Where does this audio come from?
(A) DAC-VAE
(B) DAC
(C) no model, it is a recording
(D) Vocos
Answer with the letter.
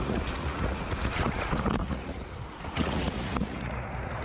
D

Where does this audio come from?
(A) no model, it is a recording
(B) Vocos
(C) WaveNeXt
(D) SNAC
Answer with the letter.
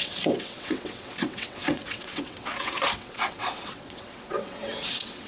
C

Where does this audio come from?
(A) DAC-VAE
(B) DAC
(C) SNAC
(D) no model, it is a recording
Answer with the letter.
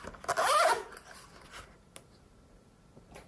D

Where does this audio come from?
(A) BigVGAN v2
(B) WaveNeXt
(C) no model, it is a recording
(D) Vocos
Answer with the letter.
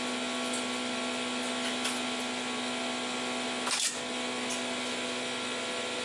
C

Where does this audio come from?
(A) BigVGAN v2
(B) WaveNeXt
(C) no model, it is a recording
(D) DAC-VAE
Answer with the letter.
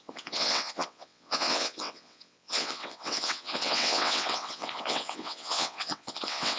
B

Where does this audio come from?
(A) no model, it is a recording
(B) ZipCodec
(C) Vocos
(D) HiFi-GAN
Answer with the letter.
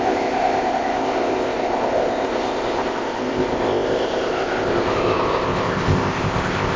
B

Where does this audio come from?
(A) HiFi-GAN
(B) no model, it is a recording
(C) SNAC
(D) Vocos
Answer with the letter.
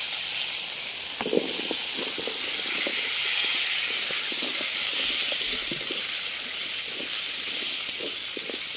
B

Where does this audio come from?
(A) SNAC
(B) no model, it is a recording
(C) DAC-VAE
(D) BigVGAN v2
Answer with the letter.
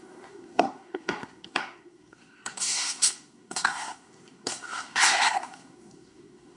A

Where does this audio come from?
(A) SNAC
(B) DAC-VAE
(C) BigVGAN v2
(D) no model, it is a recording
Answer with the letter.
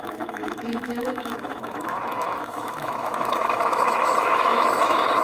B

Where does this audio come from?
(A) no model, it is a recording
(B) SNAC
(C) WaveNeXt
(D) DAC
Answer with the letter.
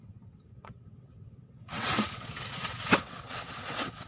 C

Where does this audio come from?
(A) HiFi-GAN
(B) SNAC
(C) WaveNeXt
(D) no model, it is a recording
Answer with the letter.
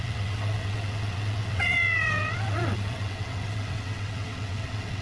C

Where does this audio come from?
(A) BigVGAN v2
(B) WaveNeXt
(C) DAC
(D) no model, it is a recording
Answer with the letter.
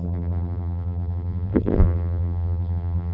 A